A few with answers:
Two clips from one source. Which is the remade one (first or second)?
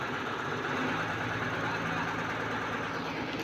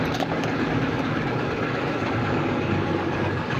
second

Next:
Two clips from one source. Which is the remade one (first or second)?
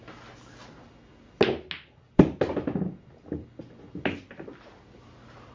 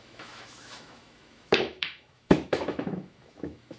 second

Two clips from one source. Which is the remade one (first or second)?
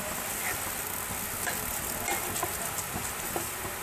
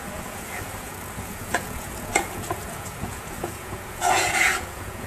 second